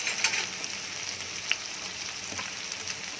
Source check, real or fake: real